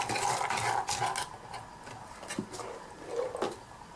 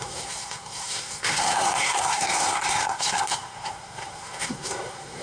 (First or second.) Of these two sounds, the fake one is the second